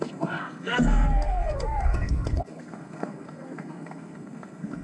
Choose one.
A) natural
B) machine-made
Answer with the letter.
B